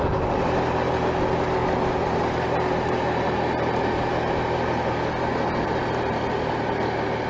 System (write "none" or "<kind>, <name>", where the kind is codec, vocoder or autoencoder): none